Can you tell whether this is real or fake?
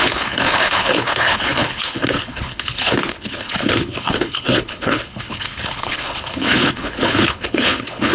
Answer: fake